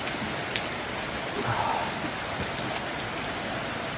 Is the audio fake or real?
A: real